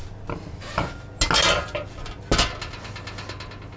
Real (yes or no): yes